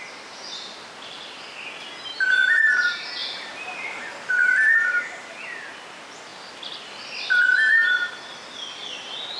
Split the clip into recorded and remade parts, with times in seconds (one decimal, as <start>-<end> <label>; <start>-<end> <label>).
0.0-9.4 recorded